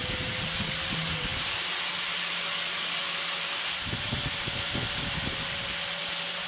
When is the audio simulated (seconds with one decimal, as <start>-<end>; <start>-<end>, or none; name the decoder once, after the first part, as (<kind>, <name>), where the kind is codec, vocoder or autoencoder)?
none